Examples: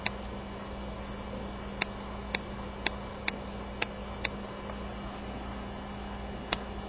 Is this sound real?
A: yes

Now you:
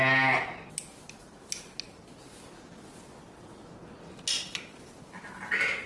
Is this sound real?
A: yes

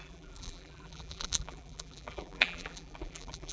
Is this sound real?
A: no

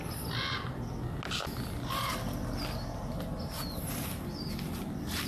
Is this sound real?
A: yes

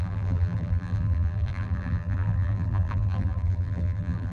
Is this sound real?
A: no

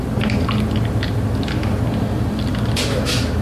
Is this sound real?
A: no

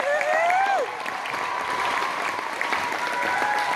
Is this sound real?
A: no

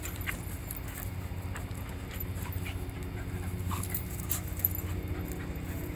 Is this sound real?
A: yes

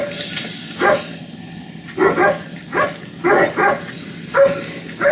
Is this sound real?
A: yes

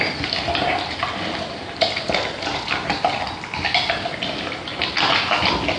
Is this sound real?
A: yes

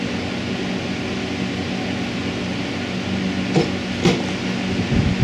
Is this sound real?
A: yes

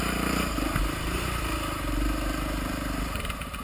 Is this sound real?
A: no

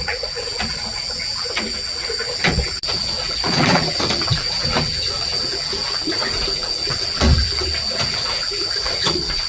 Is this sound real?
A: no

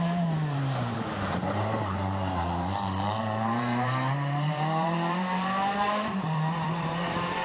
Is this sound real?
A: no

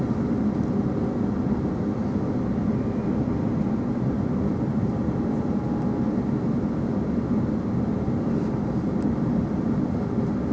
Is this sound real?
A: yes